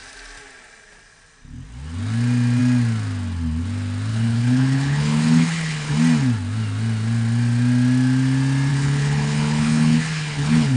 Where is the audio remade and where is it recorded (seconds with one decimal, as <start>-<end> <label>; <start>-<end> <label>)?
0.0-4.1 recorded; 4.1-5.9 remade; 5.9-8.7 recorded; 8.7-10.8 remade